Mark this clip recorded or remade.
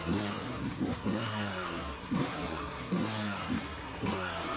remade